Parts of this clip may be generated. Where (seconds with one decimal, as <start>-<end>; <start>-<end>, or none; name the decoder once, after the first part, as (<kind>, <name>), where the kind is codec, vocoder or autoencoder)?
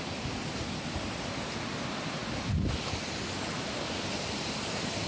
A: none